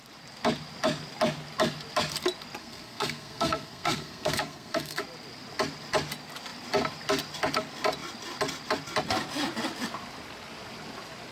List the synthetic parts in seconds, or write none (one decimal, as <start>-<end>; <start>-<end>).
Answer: 2.6-5.0